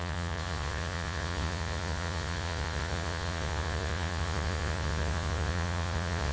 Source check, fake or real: fake